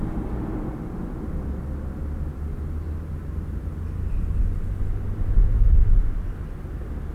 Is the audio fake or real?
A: real